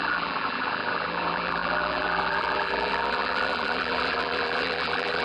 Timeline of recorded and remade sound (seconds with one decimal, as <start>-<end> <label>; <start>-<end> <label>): 0.0-5.2 remade